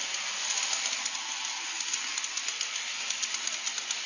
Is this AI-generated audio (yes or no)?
no